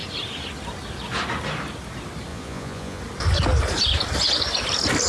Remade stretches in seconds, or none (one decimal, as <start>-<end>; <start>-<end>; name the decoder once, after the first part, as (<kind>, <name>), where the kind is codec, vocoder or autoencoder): 2.3-3.0 (vocoder, Vocos)